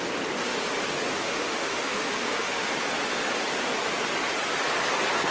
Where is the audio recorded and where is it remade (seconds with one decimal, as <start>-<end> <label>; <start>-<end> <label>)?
0.0-1.1 recorded; 1.1-2.7 remade; 2.7-5.3 recorded